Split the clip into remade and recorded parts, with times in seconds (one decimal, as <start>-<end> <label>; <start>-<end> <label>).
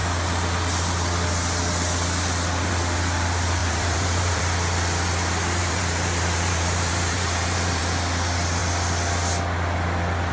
0.0-3.6 recorded; 3.6-4.4 remade; 4.4-5.6 recorded; 5.6-7.8 remade; 7.8-10.3 recorded